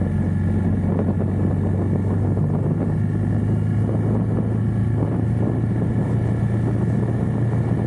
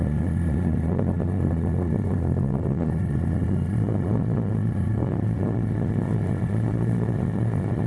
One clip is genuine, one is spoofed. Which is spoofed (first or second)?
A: second